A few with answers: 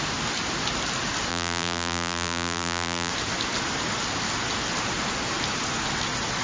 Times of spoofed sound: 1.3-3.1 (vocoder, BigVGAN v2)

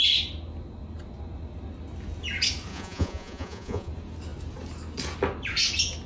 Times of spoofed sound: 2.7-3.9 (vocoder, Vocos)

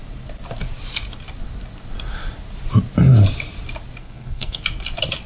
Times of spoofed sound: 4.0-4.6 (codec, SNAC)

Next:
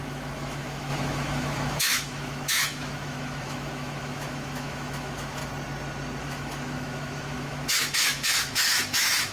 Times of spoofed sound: 0.0-5.4 (autoencoder, DAC-VAE); 6.2-9.3

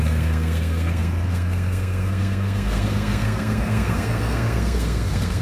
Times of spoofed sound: 0.0-5.4 (codec, SNAC)

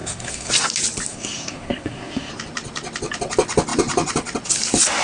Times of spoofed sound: 0.0-0.5 (codec, SNAC); 1.1-2.3

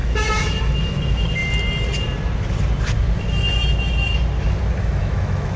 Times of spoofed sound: 0.0-1.4 (autoencoder, DAC-VAE); 4.8-5.6

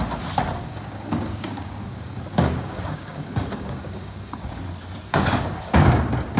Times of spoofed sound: 0.6-4.4 (codec, DAC); 5.1-6.0